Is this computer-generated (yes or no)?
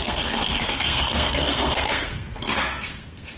yes